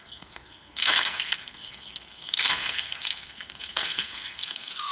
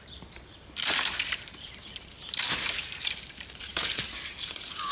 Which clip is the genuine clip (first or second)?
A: second